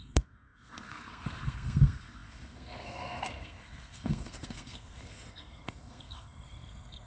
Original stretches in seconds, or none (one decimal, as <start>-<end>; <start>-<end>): none